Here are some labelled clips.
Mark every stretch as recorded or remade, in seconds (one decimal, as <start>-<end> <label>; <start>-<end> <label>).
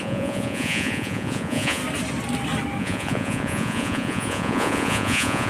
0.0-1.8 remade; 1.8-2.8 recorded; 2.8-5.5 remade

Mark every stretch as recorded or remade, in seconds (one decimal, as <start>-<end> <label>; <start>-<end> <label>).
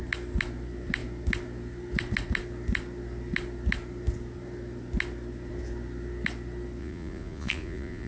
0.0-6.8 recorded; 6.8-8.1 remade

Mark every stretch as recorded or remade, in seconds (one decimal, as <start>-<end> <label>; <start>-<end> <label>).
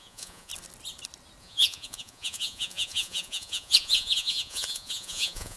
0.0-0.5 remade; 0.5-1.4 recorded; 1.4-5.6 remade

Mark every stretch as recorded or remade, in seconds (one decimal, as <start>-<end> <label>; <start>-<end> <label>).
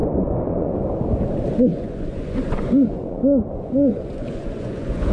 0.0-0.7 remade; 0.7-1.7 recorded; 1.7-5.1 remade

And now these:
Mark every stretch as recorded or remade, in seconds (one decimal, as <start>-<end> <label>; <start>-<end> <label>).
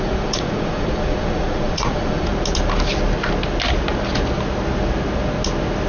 0.0-2.3 remade; 2.3-5.9 recorded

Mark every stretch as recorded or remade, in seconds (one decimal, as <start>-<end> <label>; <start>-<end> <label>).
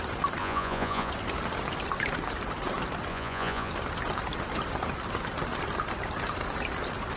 0.0-0.4 recorded; 0.4-1.1 remade; 1.1-3.1 recorded; 3.1-3.7 remade; 3.7-7.2 recorded